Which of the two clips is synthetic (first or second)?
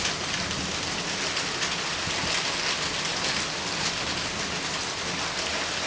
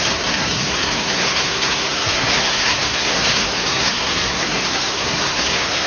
second